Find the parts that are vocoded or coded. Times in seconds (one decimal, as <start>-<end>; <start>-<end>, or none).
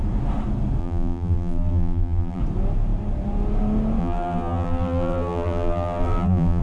0.8-2.4; 4.0-6.6